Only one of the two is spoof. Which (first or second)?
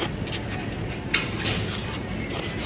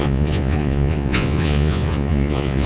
second